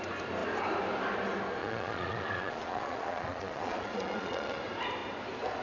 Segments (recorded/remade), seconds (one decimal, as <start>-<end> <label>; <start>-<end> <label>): 0.0-1.6 recorded; 1.6-4.6 remade; 4.6-5.6 recorded